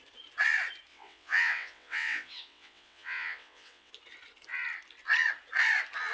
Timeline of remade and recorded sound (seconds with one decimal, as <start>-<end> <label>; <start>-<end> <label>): 0.0-0.9 recorded; 0.9-3.9 remade; 3.9-6.1 recorded